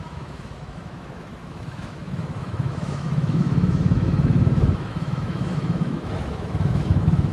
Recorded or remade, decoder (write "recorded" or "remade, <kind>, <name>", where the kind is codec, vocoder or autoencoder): remade, autoencoder, DAC-VAE